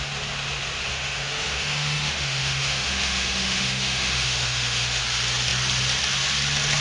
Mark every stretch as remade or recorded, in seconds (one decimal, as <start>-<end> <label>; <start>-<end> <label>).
0.0-0.9 recorded; 0.9-5.0 remade; 5.0-6.8 recorded